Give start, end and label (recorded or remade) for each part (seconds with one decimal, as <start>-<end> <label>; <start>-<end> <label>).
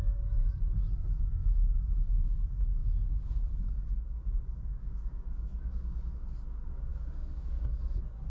0.0-4.7 recorded; 4.7-5.7 remade; 5.7-6.9 recorded; 6.9-7.8 remade; 7.8-8.3 recorded